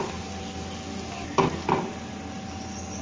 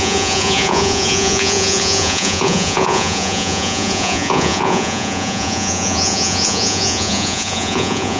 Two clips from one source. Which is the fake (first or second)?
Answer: second